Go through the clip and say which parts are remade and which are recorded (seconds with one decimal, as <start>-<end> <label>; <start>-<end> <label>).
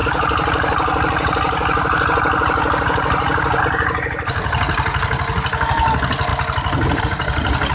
0.0-7.7 recorded